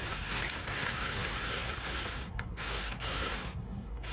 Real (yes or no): no